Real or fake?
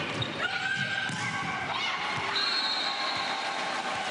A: real